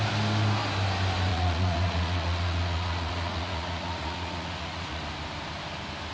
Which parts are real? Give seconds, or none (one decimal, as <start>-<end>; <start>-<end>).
0.0-1.3; 5.0-6.1